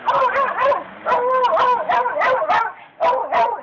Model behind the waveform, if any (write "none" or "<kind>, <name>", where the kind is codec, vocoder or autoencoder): none